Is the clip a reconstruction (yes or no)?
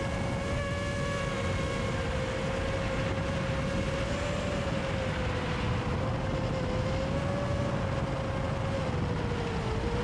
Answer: no